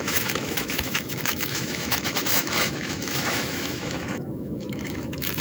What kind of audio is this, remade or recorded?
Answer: remade